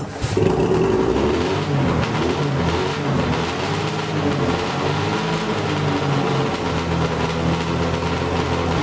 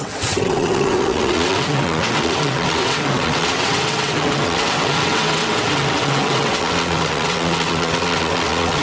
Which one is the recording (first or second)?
first